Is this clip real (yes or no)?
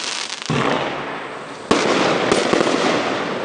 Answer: yes